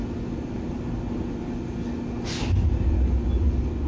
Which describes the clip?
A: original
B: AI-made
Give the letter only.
A